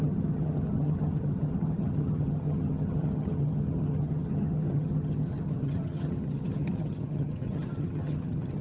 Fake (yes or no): yes